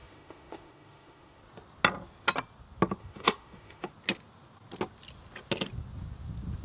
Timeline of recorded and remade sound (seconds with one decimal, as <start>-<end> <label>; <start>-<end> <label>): 0.0-1.4 remade; 1.4-3.0 recorded; 3.0-3.9 remade; 3.9-6.6 recorded